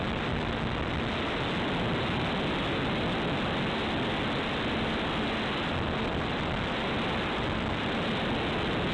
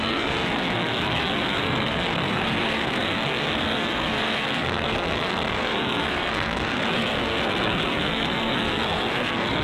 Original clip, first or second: first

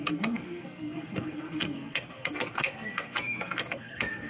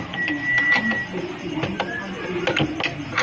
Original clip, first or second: second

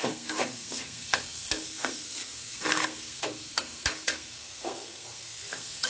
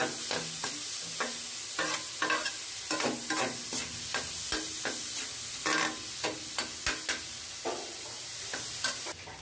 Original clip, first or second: second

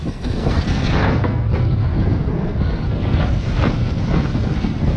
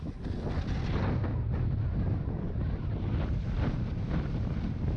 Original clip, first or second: second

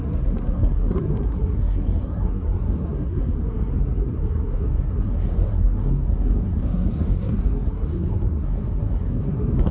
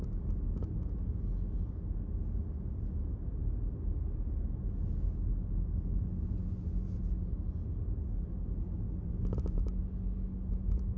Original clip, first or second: second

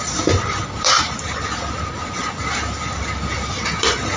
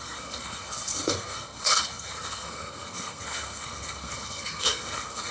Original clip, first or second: first